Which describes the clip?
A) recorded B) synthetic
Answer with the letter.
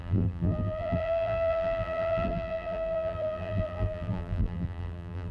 B